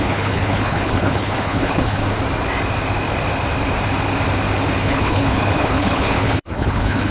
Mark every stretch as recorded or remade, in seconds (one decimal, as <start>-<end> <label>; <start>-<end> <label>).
0.0-2.0 remade; 2.0-4.8 recorded; 4.8-7.1 remade